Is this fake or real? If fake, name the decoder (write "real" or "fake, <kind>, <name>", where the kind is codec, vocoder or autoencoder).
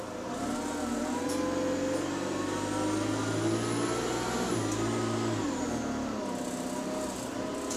real